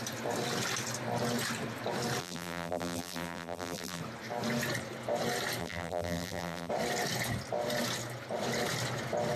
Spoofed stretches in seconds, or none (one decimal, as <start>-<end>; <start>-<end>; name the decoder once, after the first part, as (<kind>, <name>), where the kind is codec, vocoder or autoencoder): 2.2-4.0 (vocoder, BigVGAN v2); 5.6-6.7